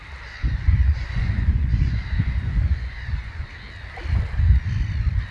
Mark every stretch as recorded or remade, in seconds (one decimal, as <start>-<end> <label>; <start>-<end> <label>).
0.0-0.4 recorded; 0.4-3.5 remade; 3.5-5.3 recorded